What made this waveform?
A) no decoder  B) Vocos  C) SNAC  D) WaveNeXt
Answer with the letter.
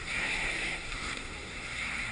C